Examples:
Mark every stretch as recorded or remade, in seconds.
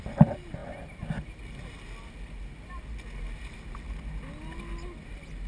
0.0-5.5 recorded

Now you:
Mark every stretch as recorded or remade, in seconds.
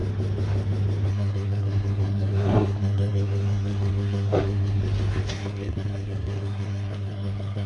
0.0-1.1 recorded; 1.1-4.8 remade; 4.8-5.3 recorded; 5.3-7.7 remade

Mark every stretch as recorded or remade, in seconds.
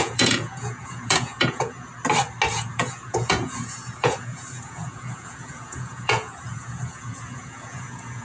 0.0-1.9 remade; 1.9-2.5 recorded; 2.5-8.2 remade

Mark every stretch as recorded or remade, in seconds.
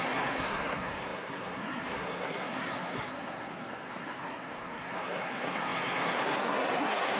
0.0-7.2 remade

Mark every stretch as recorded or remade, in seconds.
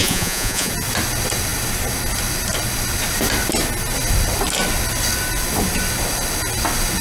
0.0-0.7 remade; 0.7-7.0 recorded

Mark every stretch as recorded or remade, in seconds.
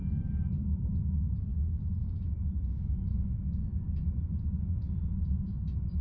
0.0-1.0 remade; 1.0-1.5 recorded; 1.5-2.2 remade; 2.2-3.1 recorded; 3.1-6.0 remade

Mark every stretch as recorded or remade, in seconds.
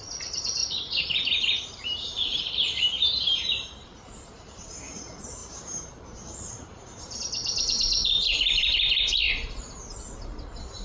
0.0-0.6 recorded; 0.6-4.7 remade; 4.7-5.4 recorded; 5.4-7.2 remade; 7.2-10.8 recorded